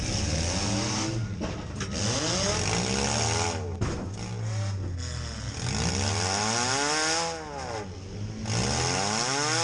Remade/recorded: recorded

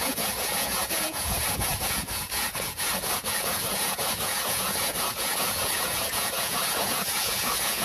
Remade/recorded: remade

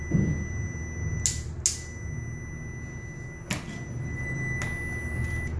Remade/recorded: recorded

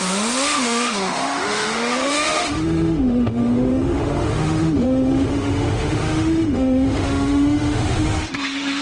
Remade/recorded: remade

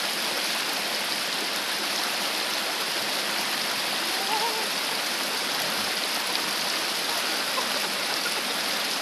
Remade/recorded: recorded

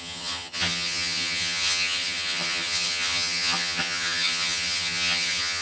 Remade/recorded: remade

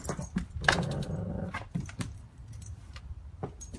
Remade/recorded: remade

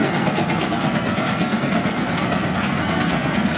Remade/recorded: remade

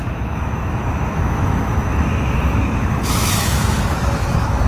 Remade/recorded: remade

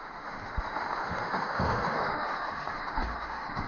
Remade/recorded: remade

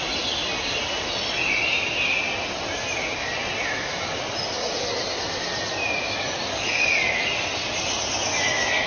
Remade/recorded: recorded